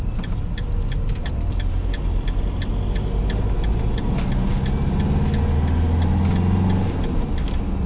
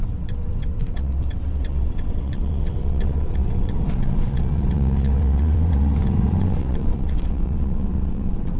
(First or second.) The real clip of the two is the first